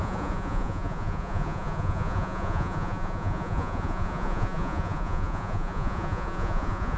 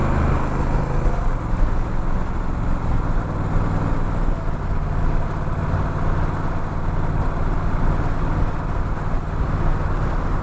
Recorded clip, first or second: second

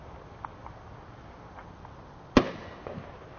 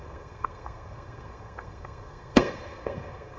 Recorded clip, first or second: first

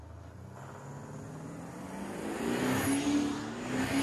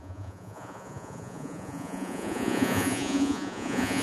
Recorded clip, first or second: first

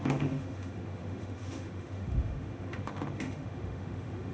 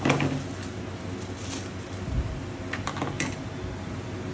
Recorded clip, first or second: second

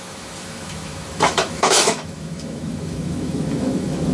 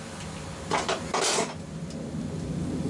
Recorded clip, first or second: second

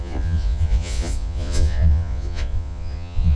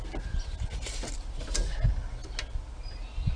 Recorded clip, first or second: second